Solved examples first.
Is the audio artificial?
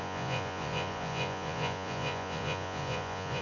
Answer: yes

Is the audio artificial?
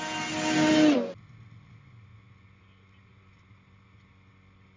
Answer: no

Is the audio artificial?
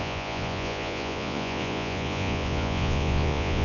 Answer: yes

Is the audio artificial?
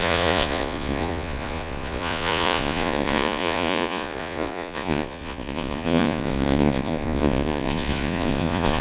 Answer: yes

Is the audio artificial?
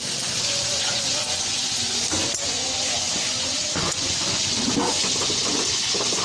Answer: yes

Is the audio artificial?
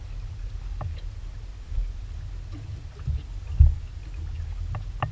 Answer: no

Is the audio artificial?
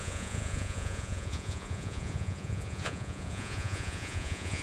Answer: yes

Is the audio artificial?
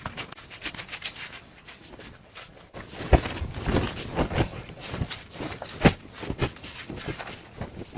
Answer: no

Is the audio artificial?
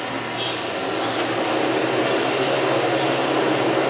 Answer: no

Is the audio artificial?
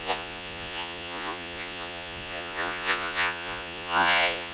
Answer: yes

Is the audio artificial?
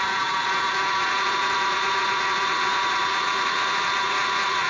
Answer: yes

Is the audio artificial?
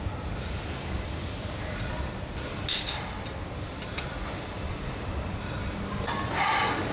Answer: no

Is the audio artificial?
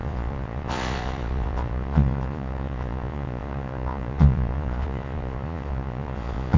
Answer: yes